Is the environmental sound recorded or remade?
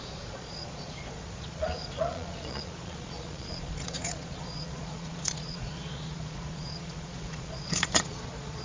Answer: remade